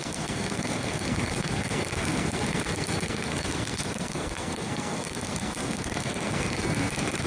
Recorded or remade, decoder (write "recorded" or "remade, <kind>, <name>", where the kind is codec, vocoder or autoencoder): remade, codec, SNAC